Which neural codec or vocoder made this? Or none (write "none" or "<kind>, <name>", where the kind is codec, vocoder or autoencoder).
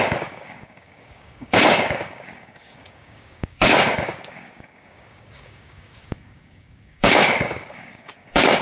codec, DAC